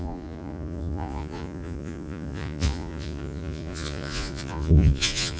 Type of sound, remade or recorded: remade